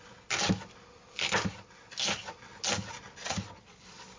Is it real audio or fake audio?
real